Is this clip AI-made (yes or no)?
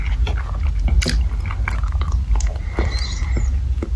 no